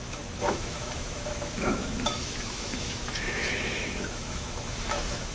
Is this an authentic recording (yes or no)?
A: no